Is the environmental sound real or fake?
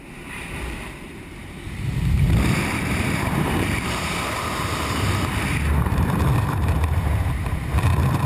fake